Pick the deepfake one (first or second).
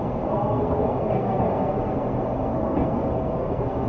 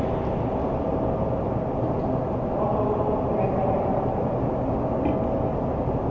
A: first